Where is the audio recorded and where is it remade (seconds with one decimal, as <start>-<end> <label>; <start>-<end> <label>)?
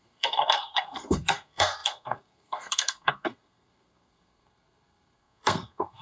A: 0.0-6.0 remade